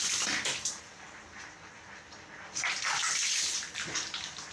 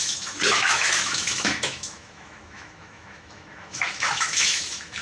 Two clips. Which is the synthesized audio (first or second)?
second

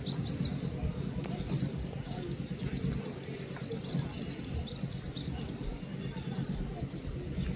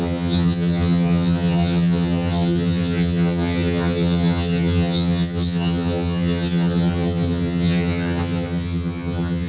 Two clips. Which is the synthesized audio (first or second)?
second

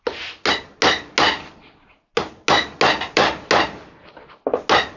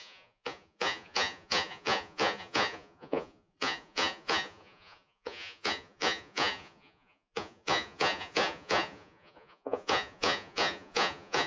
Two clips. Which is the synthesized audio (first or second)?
second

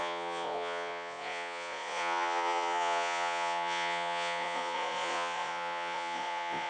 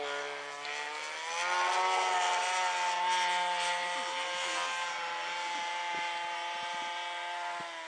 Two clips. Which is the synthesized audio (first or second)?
first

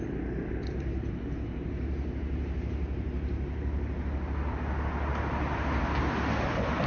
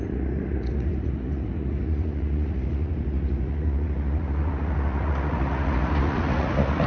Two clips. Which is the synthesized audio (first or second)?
second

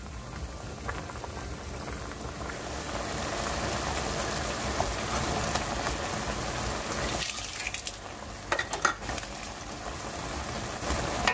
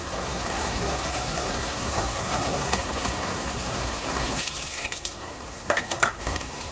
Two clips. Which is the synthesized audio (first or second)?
second